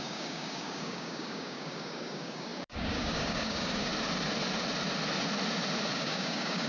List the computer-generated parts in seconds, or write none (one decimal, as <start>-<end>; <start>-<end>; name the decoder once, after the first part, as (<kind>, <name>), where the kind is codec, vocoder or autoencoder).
0.0-3.9 (codec, DAC); 5.9-6.7